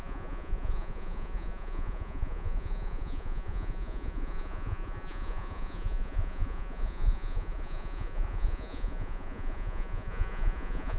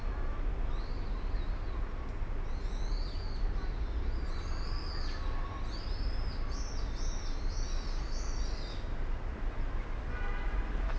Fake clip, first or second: first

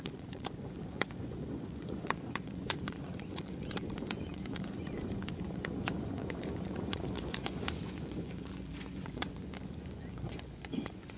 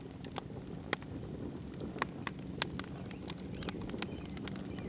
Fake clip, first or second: first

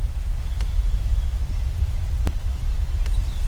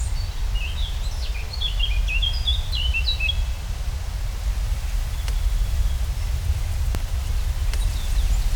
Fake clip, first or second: first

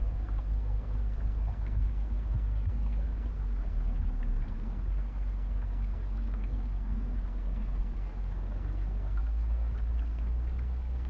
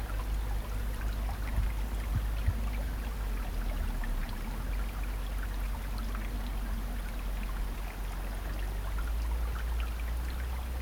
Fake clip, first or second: first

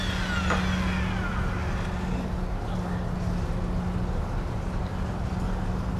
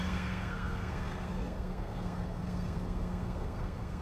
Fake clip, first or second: second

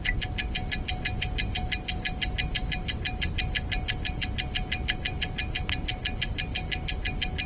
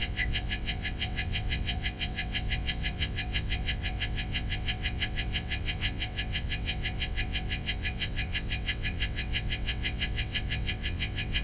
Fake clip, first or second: second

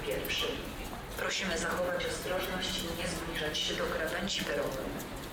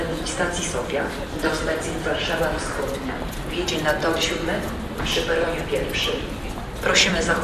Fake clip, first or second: second